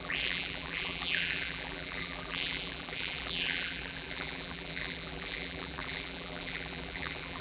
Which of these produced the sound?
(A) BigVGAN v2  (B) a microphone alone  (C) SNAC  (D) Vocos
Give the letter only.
A